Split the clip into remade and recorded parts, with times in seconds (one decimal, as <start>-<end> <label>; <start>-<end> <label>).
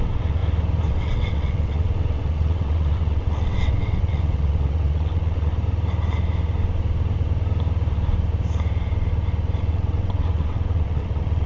0.0-0.4 remade; 0.4-0.9 recorded; 0.9-5.5 remade; 5.5-9.6 recorded; 9.6-11.5 remade